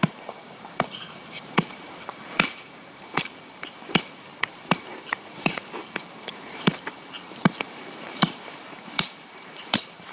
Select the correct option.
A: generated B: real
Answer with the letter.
A